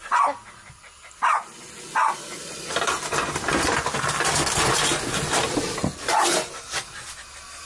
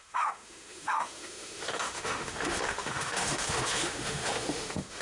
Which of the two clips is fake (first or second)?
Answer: second